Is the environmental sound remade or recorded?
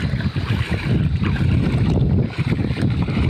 recorded